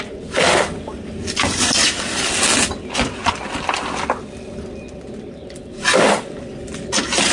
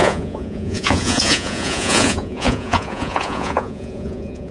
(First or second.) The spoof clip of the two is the second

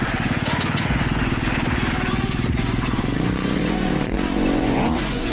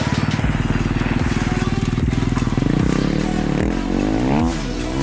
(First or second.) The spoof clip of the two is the first